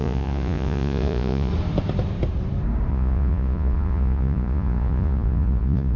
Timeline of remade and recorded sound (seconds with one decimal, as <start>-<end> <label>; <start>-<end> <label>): 0.0-1.5 remade; 1.5-2.9 recorded; 2.9-6.0 remade